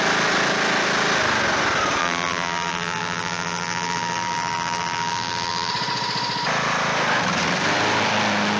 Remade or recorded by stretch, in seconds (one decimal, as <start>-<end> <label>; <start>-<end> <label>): 0.0-2.0 recorded; 2.0-5.7 remade; 5.7-8.6 recorded

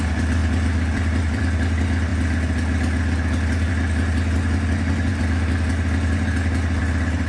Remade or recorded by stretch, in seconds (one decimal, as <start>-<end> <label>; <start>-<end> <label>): 0.0-0.4 recorded; 0.4-1.4 remade; 1.4-7.3 recorded